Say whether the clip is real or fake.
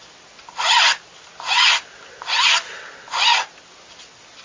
real